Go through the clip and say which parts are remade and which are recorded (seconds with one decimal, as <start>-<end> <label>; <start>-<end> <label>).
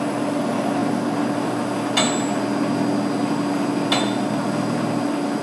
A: 0.0-5.4 recorded